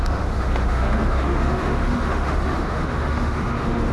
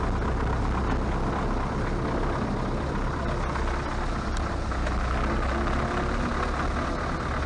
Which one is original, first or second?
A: second